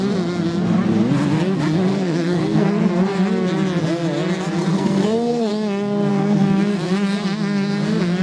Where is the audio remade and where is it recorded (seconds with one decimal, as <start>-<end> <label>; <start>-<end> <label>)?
0.0-1.9 recorded; 1.9-2.9 remade; 2.9-4.7 recorded; 4.7-5.5 remade; 5.5-6.1 recorded; 6.1-6.9 remade; 6.9-8.2 recorded